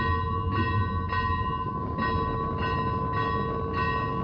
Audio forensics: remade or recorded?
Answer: recorded